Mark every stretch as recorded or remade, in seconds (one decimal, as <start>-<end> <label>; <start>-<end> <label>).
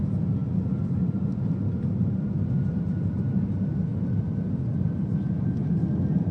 0.0-6.3 recorded